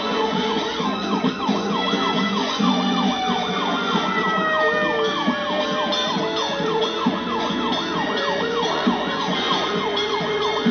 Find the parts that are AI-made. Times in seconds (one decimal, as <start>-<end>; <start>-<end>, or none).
0.0-4.2; 6.4-10.7